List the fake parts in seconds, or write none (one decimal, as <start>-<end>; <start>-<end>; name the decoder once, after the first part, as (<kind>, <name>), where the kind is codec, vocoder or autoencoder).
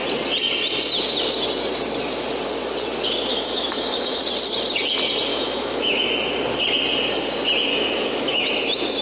3.3-4.2 (autoencoder, DAC-VAE); 5.3-6.1; 7.7-8.5